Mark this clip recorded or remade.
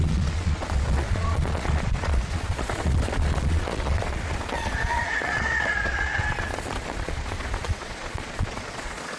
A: remade